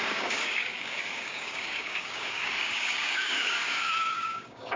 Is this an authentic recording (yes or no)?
no